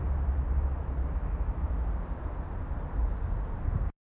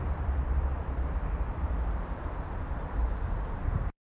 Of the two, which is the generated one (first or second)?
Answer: second